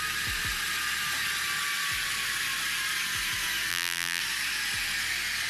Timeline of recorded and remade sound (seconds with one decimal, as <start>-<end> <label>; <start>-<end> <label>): 0.0-3.7 recorded; 3.7-4.2 remade; 4.2-5.5 recorded